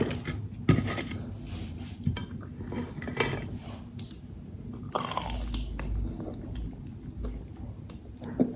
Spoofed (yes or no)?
no